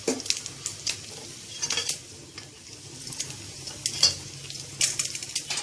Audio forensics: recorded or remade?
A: recorded